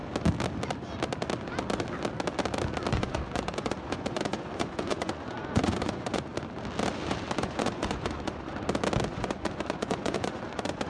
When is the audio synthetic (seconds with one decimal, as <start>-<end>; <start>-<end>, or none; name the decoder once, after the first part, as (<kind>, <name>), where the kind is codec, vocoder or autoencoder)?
2.9-6.3 (vocoder, Vocos); 7.4-8.5; 9.1-10.9